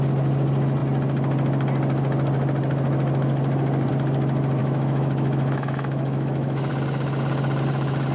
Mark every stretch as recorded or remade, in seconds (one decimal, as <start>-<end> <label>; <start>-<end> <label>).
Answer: 0.0-4.6 recorded; 4.6-6.7 remade; 6.7-8.1 recorded